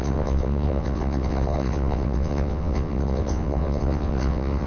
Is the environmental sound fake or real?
fake